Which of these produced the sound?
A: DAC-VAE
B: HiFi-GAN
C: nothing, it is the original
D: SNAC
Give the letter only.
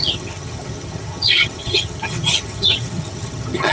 B